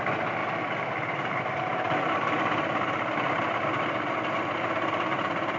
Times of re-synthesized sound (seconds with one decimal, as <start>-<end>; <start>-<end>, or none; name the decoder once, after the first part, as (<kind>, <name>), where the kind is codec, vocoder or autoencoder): 0.4-3.8 (vocoder, BigVGAN v2)